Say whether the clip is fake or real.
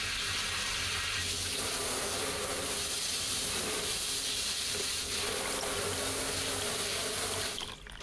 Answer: real